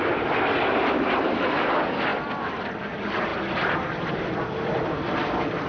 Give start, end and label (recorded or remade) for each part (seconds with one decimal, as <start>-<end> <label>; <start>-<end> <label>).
0.0-5.7 recorded